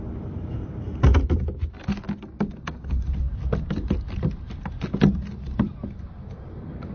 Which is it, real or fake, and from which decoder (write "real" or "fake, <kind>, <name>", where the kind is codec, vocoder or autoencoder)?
real